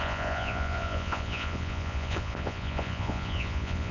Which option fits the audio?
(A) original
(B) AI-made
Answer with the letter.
B